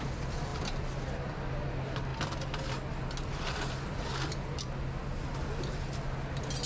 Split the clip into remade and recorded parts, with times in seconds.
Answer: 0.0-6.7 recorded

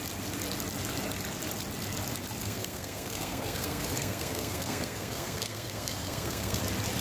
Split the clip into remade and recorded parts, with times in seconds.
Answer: 0.0-2.4 recorded; 2.4-6.6 remade; 6.6-7.0 recorded

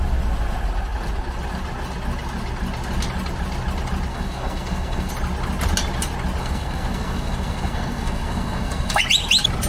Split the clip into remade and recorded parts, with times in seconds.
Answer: 0.0-4.1 recorded; 4.1-5.1 remade; 5.1-6.4 recorded; 6.4-9.0 remade; 9.0-9.7 recorded

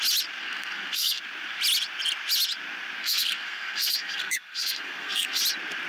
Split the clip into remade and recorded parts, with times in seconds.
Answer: 0.0-0.4 recorded; 0.4-1.2 remade; 1.2-3.0 recorded; 3.0-5.4 remade; 5.4-5.9 recorded